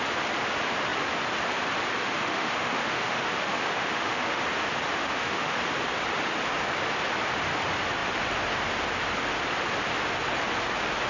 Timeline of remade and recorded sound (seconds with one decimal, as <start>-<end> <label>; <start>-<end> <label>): 0.0-2.0 recorded; 2.0-4.4 remade; 4.4-5.0 recorded; 5.0-5.6 remade; 5.6-11.1 recorded